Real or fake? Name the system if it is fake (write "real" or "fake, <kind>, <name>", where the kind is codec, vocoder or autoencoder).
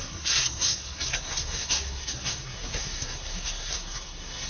fake, codec, SNAC